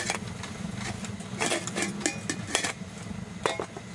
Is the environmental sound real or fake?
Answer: real